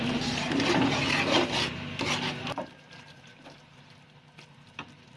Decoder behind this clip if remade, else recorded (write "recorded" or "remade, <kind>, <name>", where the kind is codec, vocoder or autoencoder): recorded